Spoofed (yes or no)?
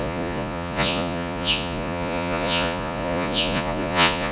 yes